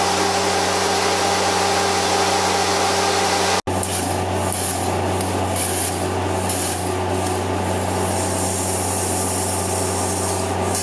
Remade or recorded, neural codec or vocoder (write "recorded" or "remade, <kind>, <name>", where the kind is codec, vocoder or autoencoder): recorded